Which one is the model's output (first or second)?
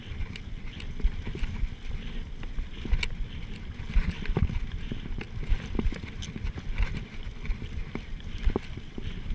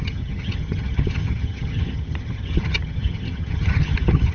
second